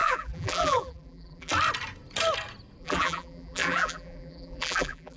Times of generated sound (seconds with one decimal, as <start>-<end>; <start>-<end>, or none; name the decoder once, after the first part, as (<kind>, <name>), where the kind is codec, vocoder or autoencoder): 0.0-1.5 (vocoder, BigVGAN v2); 2.8-5.2